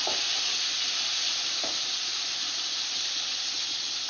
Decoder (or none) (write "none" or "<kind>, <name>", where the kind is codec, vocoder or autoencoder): none